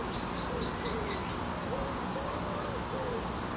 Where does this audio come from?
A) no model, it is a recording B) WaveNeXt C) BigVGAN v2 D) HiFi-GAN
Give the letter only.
A